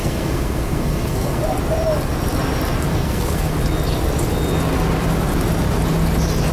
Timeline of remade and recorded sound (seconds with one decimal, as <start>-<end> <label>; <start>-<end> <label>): 0.0-1.4 remade; 1.4-2.9 recorded; 2.9-3.5 remade; 3.5-6.5 recorded